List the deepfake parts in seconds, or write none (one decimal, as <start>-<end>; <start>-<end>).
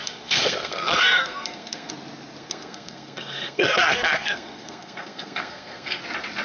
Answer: 0.0-1.9; 2.4-6.0